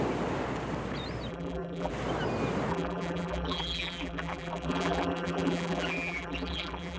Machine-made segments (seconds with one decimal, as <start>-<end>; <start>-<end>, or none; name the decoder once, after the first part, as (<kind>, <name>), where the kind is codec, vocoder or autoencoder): 1.3-1.9 (vocoder, BigVGAN v2); 2.7-7.0